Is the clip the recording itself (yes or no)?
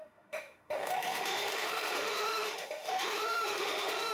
no